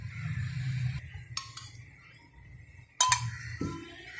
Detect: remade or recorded recorded